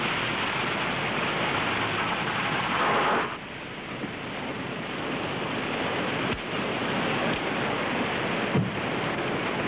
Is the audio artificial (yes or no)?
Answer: no